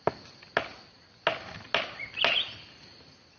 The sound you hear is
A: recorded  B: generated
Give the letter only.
A